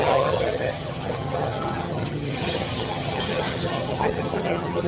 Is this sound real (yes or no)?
no